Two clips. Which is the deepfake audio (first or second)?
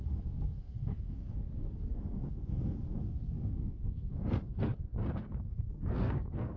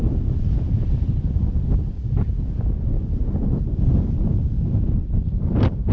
first